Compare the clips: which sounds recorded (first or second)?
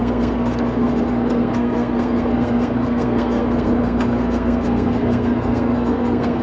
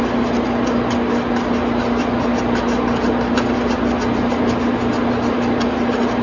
second